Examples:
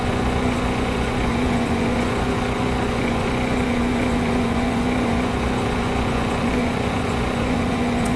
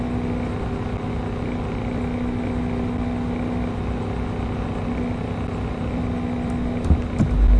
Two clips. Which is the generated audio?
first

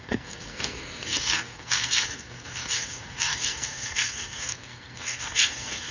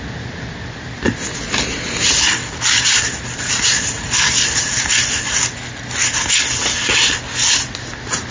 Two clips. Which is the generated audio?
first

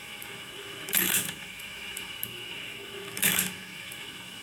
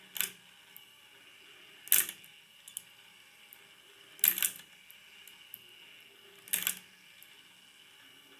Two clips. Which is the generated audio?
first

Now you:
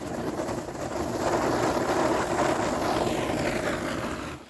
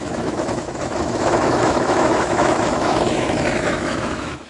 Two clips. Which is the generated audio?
second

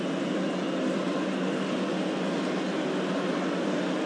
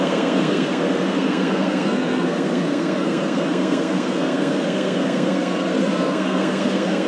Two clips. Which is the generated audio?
second